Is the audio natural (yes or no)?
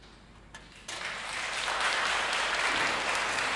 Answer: yes